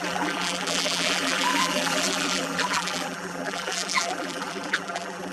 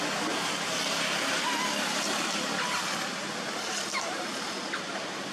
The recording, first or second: second